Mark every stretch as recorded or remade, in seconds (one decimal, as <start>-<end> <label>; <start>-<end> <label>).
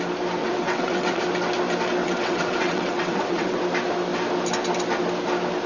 0.0-0.4 recorded; 0.4-1.2 remade; 1.2-2.0 recorded; 2.0-3.6 remade; 3.6-5.7 recorded